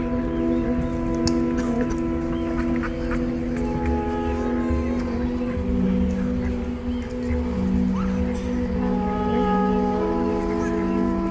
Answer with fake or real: real